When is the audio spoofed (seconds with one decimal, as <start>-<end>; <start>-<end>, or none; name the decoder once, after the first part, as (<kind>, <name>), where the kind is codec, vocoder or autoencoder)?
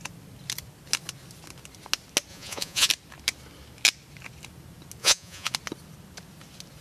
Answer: 2.3-2.9 (vocoder, Vocos); 5.0-5.5